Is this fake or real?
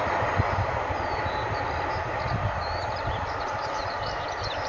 fake